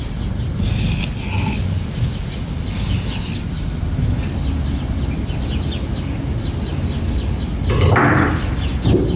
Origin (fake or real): real